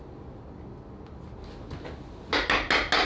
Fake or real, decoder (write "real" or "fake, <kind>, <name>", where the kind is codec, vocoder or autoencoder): real